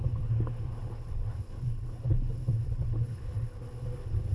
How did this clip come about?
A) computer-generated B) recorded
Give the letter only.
A